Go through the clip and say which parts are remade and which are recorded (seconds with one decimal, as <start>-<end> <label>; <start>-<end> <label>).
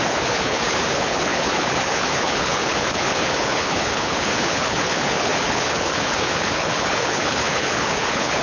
0.0-8.4 remade